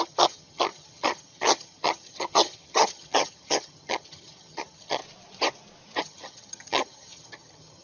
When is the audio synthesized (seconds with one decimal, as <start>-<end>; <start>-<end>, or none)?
0.0-5.0; 6.0-7.8